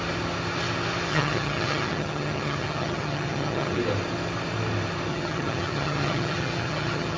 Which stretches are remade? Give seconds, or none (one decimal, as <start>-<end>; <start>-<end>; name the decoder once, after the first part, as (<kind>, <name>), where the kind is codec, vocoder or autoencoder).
1.1-3.8 (vocoder, HiFi-GAN); 5.1-7.2